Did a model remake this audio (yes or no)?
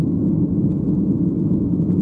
no